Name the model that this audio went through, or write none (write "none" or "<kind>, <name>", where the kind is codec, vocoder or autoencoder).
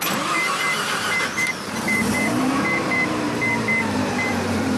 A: vocoder, BigVGAN v2